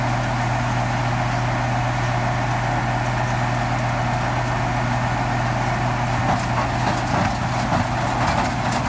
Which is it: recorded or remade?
recorded